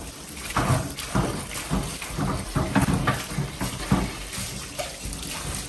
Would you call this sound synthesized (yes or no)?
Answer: no